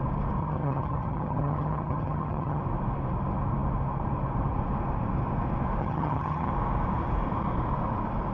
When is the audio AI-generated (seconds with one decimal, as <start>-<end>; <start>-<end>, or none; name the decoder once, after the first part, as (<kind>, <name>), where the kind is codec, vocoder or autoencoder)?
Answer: 0.4-2.6 (vocoder, HiFi-GAN); 5.8-6.5